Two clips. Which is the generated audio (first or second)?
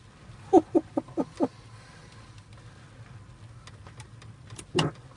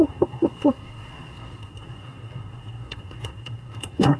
second